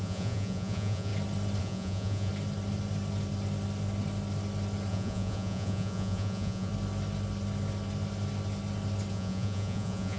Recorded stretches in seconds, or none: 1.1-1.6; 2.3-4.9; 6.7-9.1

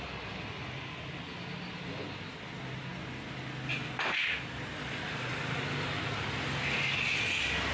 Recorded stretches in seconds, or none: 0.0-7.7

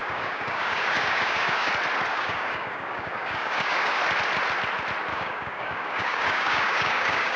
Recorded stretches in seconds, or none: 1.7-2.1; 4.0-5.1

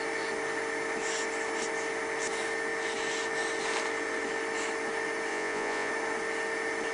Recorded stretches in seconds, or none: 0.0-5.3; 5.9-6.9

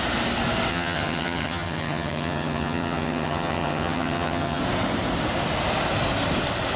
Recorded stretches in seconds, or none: 0.0-0.7; 4.6-6.8

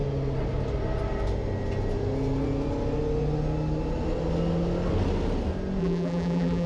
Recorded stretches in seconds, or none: 0.0-5.8

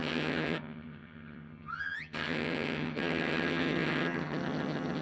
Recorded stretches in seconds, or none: none